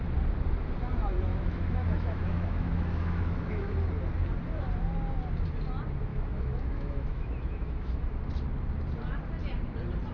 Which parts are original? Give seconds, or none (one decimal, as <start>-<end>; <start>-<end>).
0.0-1.3; 3.7-6.1; 8.2-10.1